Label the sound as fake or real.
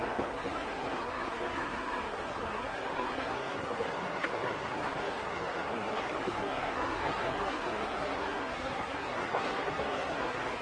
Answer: fake